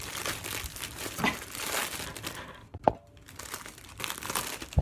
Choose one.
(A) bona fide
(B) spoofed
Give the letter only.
B